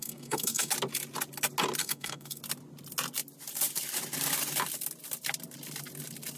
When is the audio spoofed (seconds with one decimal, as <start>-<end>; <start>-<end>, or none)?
0.0-0.7; 1.8-2.4